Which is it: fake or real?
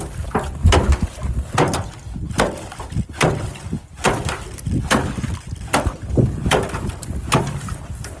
real